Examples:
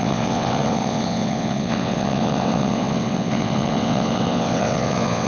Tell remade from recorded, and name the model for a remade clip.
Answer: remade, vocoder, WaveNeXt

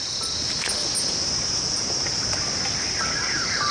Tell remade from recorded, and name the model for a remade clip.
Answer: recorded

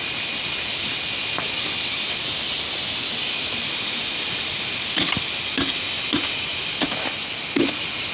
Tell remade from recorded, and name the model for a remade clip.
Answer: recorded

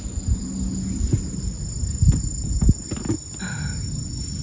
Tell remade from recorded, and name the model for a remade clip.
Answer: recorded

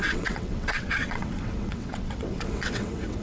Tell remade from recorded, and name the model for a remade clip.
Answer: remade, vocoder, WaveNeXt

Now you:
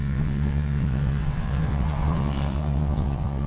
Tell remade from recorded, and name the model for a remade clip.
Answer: remade, vocoder, WaveNeXt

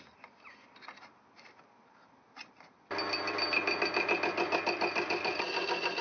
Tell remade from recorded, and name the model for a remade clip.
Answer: recorded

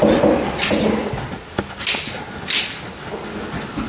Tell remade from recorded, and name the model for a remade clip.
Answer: recorded